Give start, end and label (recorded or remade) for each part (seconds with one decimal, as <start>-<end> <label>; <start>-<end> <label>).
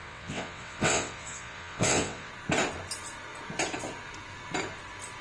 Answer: 0.0-2.3 remade; 2.3-5.2 recorded